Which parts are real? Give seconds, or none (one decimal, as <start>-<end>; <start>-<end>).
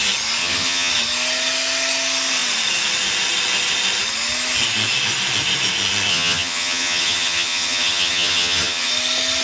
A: 0.0-0.4; 0.9-6.1; 8.9-9.4